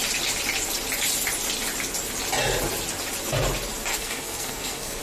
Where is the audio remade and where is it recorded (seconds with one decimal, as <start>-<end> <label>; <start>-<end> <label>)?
0.0-3.9 recorded; 3.9-5.0 remade